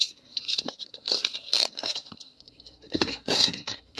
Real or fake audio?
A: fake